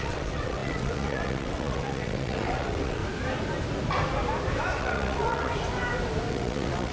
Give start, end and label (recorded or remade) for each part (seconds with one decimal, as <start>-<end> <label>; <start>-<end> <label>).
0.0-3.0 remade; 3.0-4.8 recorded; 4.8-5.5 remade; 5.5-6.3 recorded; 6.3-6.9 remade